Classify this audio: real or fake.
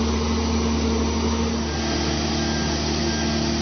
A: real